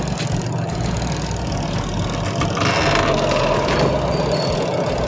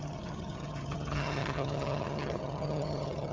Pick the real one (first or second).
first